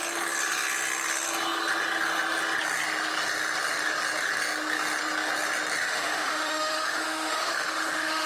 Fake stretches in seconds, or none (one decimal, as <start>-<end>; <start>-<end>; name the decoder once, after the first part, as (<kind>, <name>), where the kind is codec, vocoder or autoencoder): 5.8-8.3 (autoencoder, DAC-VAE)